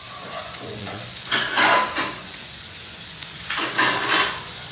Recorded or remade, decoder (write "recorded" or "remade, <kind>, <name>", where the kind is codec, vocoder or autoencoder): remade, vocoder, Vocos